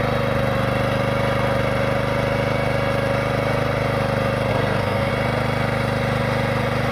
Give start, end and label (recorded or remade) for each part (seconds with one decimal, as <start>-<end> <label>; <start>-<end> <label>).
0.0-4.5 recorded; 4.5-5.1 remade; 5.1-6.9 recorded